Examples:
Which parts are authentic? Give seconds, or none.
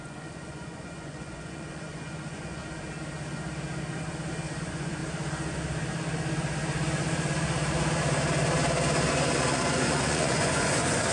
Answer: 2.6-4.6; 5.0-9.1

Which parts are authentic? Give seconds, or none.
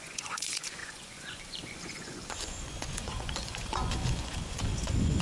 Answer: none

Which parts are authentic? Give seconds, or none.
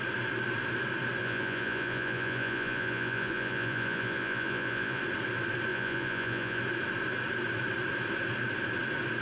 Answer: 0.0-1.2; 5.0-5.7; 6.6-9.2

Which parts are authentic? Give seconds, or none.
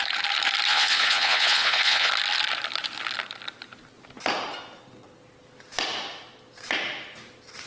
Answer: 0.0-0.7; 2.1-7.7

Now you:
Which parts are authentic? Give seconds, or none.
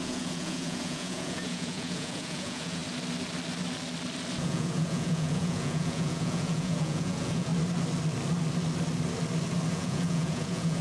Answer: 2.8-4.4; 7.5-9.7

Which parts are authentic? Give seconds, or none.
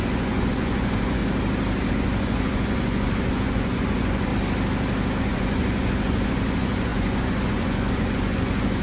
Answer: 1.2-1.9; 4.3-5.2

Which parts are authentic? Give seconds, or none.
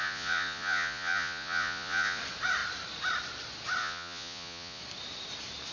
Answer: 2.2-3.8; 4.8-5.7